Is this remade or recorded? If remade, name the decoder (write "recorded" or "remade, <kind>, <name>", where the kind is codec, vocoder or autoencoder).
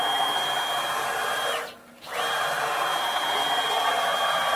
recorded